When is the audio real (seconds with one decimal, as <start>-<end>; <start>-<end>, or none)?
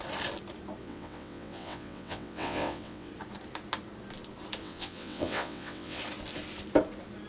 0.0-0.8; 3.1-4.6; 6.0-7.3